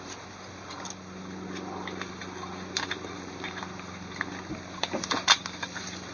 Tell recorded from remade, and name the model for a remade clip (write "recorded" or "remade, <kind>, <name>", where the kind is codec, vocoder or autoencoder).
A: recorded